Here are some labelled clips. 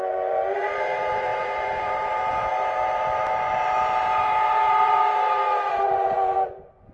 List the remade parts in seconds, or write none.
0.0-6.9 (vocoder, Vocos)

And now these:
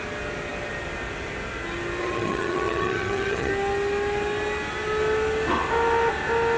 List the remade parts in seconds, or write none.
2.0-3.5 (vocoder, HiFi-GAN)